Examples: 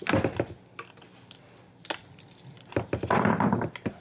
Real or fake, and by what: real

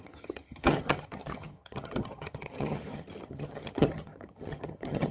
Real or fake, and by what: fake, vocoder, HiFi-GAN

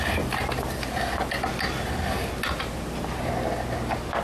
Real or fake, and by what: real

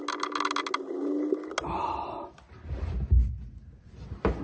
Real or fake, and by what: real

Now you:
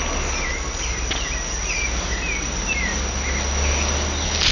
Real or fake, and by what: real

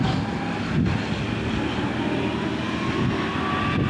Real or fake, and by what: real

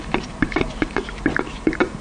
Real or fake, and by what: fake, vocoder, BigVGAN v2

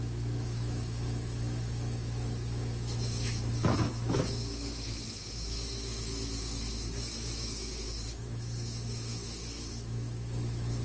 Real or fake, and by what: fake, autoencoder, DAC-VAE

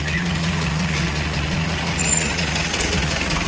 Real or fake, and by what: fake, vocoder, Vocos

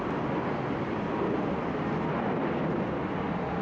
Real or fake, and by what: real